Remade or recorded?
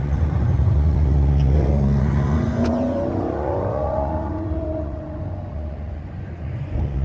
remade